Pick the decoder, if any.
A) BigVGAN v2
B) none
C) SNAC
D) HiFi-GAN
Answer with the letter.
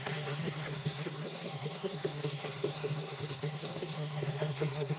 C